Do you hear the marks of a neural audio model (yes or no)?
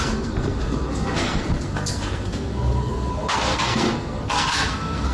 yes